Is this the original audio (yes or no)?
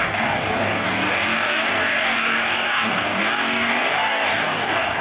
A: no